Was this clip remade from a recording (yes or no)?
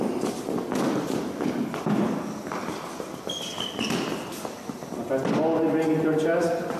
no